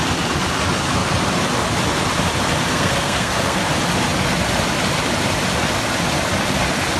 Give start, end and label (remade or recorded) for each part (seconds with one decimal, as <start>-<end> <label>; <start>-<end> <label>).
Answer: 0.0-2.7 recorded; 2.7-3.6 remade; 3.6-7.0 recorded